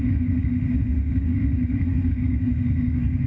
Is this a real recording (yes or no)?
no